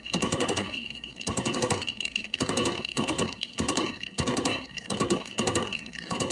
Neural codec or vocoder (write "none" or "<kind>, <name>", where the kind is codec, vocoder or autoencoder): codec, SNAC